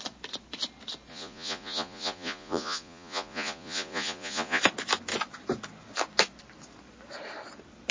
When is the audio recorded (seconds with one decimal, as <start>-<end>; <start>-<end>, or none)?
0.0-1.1; 4.6-7.9